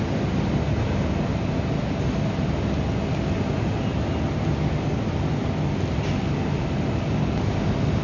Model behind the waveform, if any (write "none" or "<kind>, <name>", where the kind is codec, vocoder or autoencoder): none